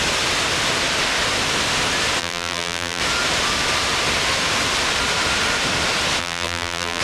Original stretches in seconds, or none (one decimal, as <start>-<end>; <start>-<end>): 0.0-2.2; 3.0-6.2